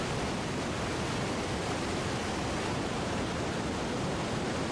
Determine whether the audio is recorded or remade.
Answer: recorded